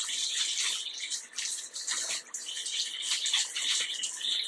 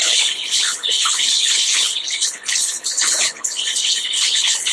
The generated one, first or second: second